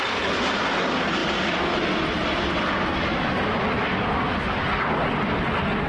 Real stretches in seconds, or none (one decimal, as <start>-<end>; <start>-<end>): 0.0-5.9